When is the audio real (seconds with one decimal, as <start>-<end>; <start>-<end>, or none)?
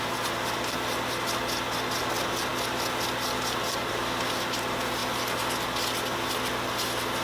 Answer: 0.0-7.2